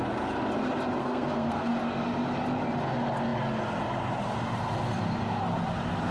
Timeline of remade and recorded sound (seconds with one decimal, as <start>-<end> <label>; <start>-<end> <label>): 0.0-1.0 recorded; 1.0-1.7 remade; 1.7-6.1 recorded